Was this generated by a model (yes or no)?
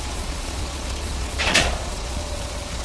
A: yes